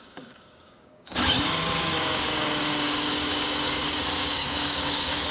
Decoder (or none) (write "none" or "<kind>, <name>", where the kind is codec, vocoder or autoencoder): codec, DAC